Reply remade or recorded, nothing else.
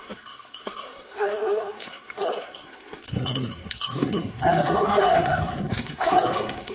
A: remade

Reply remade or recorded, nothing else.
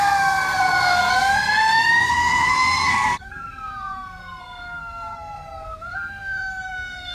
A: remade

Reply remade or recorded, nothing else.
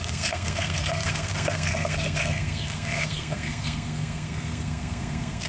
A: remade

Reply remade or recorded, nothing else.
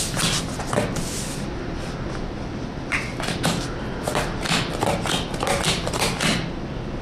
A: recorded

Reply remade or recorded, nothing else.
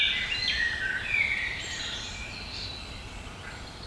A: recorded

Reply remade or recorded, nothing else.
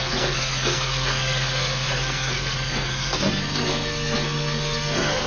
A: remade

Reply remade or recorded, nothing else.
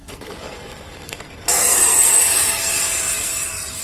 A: remade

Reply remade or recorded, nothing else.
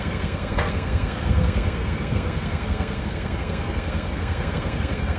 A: remade